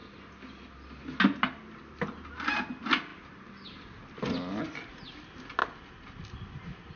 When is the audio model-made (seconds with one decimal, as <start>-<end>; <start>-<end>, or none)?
none